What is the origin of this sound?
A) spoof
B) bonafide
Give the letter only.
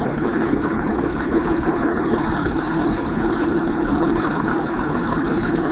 A